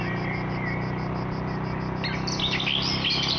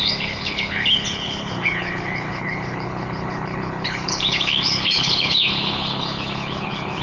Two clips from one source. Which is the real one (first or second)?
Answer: first